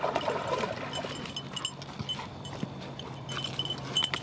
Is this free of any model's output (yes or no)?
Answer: yes